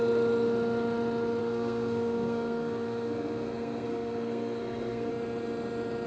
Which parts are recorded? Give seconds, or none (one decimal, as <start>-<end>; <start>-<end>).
0.0-1.4; 5.1-6.1